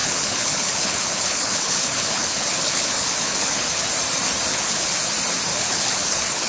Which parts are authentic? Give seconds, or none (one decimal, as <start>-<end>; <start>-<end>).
3.9-4.5; 5.0-5.5